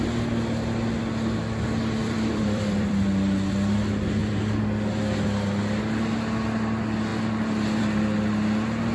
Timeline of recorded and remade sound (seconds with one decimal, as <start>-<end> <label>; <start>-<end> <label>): 0.0-2.0 recorded; 2.0-3.0 remade; 3.0-8.9 recorded